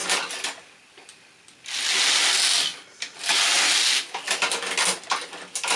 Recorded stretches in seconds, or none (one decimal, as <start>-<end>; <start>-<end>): 0.0-5.8